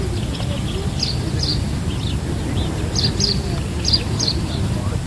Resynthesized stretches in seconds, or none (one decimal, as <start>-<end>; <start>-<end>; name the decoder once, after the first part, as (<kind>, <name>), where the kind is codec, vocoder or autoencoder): none